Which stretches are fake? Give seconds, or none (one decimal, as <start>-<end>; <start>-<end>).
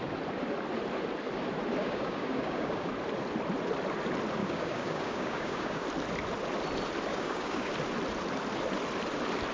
1.8-2.9; 4.4-5.8; 7.1-7.7